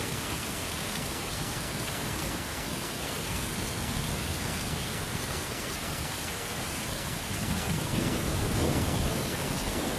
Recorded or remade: remade